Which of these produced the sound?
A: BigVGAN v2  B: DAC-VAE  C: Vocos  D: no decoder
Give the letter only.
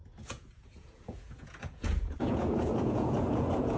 C